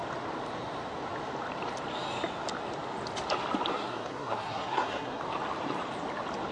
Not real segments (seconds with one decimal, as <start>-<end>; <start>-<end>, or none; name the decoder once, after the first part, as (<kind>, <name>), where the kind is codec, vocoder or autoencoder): 3.7-5.2 (codec, SNAC)